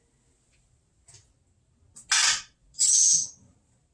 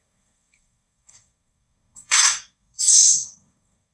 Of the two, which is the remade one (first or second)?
second